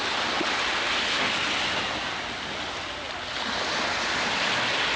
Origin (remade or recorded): recorded